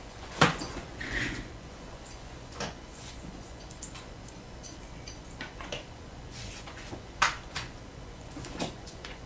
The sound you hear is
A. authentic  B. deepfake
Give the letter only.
B